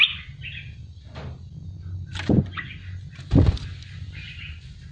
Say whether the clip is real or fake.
real